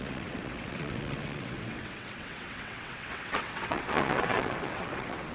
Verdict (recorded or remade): remade